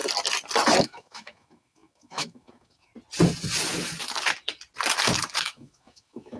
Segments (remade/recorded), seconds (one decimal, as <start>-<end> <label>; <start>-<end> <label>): 0.0-0.8 recorded; 0.8-2.9 remade; 2.9-5.4 recorded; 5.4-6.4 remade